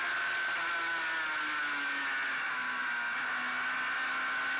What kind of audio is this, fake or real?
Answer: real